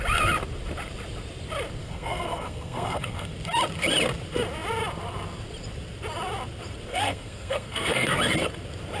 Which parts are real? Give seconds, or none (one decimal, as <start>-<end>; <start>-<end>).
0.0-1.8; 3.3-6.9; 8.2-9.0